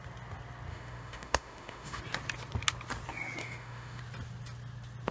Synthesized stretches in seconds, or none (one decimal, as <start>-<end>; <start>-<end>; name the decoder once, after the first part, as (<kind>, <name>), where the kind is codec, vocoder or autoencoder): 0.7-2.0 (autoencoder, DAC-VAE); 3.4-4.0